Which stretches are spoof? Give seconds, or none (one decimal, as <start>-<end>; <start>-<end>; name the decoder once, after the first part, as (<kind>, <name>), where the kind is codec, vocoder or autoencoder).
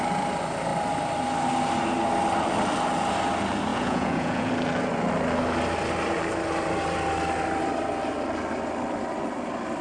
3.7-4.5 (vocoder, Vocos)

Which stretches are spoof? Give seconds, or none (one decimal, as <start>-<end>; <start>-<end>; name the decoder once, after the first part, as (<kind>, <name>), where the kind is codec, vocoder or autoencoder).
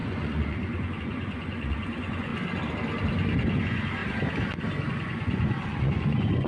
0.0-2.3 (vocoder, Vocos); 3.6-4.0; 4.9-6.5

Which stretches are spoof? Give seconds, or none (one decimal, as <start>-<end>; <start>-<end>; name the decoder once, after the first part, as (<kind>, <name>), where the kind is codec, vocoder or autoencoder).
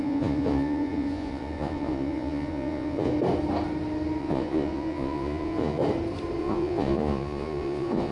0.0-3.1 (vocoder, Vocos); 4.2-5.8; 6.4-8.1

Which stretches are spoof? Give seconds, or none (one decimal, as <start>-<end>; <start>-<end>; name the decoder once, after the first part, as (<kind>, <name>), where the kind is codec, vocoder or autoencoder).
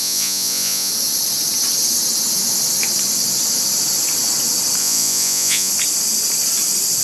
0.0-0.9 (vocoder, Vocos); 4.8-5.7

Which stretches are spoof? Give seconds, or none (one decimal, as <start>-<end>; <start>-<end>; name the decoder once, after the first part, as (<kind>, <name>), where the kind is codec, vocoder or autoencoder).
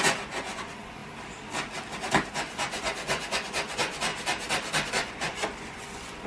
0.0-1.0 (vocoder, Vocos); 2.3-4.1; 4.9-6.3